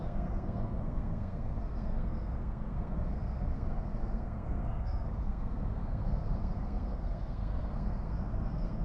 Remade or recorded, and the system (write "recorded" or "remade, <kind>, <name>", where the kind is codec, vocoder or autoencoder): remade, codec, SNAC